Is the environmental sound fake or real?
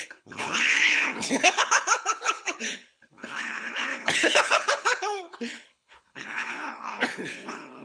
fake